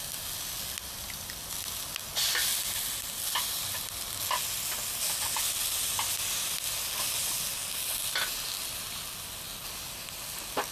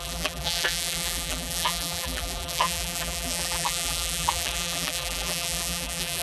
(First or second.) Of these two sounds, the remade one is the second